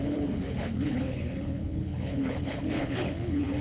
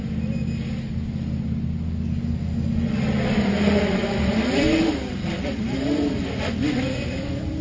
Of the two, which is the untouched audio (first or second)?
second